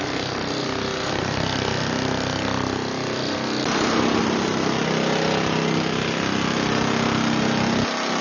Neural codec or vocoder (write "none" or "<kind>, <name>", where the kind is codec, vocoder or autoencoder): none